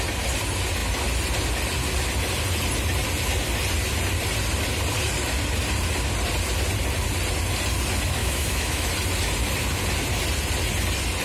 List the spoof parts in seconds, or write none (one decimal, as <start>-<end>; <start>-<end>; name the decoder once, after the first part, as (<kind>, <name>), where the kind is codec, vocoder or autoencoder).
8.2-8.9 (autoencoder, DAC-VAE)